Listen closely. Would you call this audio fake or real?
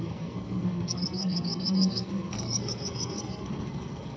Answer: fake